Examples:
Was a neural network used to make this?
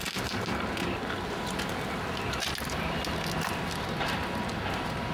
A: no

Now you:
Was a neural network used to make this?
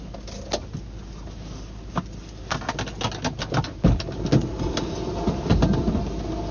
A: no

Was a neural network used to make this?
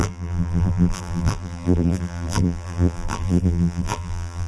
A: yes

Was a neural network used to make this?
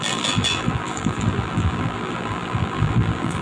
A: yes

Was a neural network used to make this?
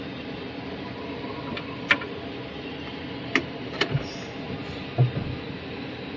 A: no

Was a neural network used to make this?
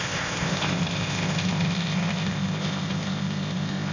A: yes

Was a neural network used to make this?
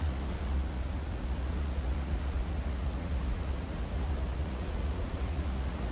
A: yes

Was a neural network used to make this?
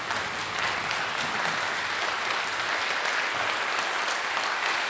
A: no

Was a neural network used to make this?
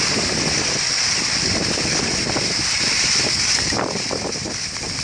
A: no